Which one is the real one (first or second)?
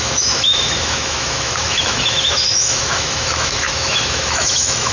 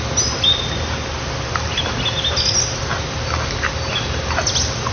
second